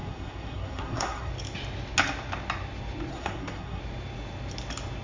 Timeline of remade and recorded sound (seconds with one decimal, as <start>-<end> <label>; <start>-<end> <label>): 0.0-1.3 remade; 1.3-3.1 recorded; 3.1-3.8 remade; 3.8-5.0 recorded